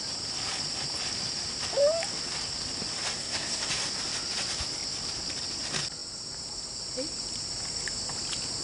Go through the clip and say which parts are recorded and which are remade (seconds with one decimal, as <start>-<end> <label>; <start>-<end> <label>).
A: 0.0-3.2 recorded; 3.2-3.7 remade; 3.7-8.6 recorded